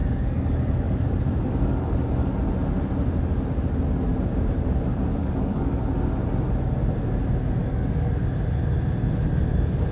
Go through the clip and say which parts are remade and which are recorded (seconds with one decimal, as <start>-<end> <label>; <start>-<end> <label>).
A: 0.0-2.4 remade; 2.4-5.2 recorded; 5.2-5.8 remade; 5.8-7.6 recorded; 7.6-8.2 remade; 8.2-9.9 recorded